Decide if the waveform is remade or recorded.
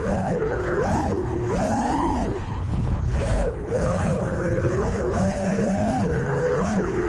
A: remade